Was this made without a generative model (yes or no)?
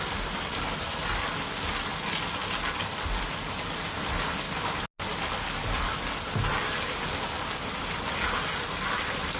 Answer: yes